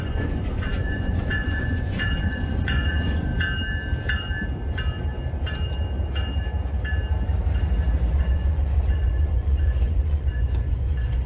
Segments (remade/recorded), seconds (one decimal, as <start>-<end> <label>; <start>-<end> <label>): 0.0-3.3 remade; 3.3-8.1 recorded; 8.1-11.3 remade